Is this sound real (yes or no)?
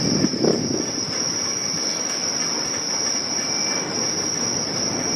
yes